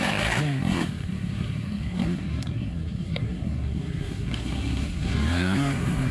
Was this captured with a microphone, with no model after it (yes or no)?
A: no